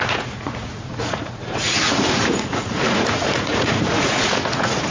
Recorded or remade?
remade